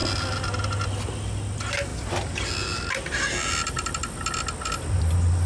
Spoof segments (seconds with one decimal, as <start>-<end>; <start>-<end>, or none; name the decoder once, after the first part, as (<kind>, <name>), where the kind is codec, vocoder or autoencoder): none